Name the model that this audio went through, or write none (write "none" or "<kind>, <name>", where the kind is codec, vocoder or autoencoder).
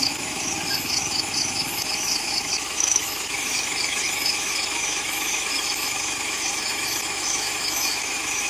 autoencoder, DAC-VAE